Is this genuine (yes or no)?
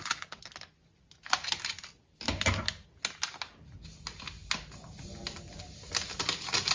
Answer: yes